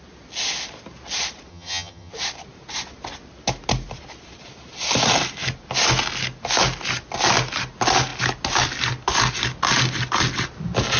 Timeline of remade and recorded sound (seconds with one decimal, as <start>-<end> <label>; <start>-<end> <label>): 0.0-1.5 recorded; 1.5-2.1 remade; 2.1-11.0 recorded

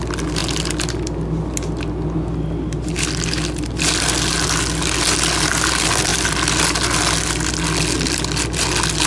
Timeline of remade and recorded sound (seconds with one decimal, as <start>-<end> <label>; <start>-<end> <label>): 0.0-9.1 recorded

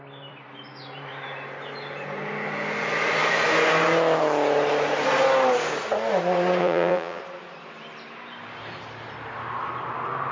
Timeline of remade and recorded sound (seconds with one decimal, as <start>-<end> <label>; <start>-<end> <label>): 0.0-6.6 recorded; 6.6-7.2 remade; 7.2-10.3 recorded

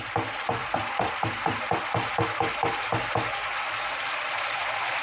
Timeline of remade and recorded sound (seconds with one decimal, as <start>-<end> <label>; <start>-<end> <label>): 0.0-0.6 recorded; 0.6-1.2 remade; 1.2-5.0 recorded

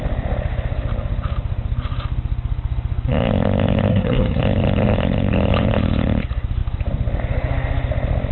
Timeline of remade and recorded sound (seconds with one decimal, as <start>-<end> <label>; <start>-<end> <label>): 0.0-3.9 recorded; 3.9-4.4 remade; 4.4-8.3 recorded